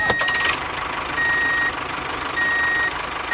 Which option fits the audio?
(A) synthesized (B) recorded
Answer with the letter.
B